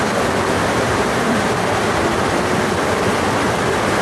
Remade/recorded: recorded